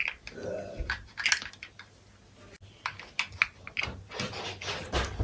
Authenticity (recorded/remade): recorded